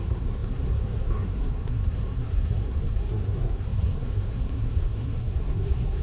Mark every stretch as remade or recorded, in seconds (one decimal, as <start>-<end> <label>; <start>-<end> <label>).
0.0-6.0 remade